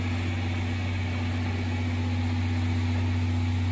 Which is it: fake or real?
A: real